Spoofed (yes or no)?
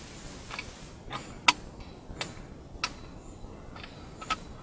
no